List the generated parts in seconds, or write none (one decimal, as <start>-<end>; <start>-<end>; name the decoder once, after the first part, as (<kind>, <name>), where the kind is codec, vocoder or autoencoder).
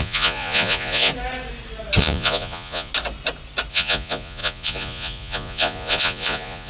0.0-1.1 (vocoder, Vocos); 2.0-2.9; 3.7-6.7